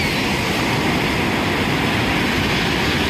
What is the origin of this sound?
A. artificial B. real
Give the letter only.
B